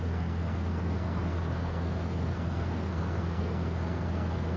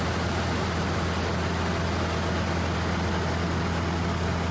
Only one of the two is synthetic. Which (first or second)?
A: first